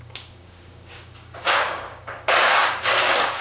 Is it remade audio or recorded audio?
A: remade